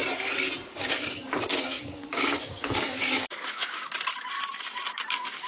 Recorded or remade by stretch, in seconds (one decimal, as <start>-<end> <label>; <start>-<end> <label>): 0.0-0.7 recorded; 0.7-4.1 remade; 4.1-4.9 recorded; 4.9-5.5 remade